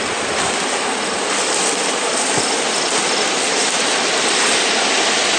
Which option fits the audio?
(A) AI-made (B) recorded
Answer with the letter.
B